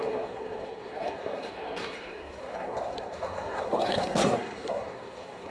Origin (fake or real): fake